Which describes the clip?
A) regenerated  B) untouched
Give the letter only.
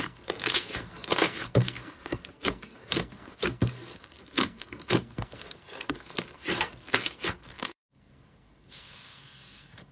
A